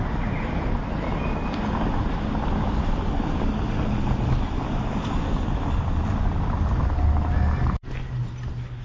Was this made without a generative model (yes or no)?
yes